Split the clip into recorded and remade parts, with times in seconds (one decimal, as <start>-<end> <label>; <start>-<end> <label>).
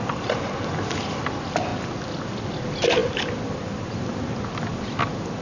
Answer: 0.0-5.4 recorded